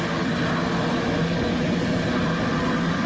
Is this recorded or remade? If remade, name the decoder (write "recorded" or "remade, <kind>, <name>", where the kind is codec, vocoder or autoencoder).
recorded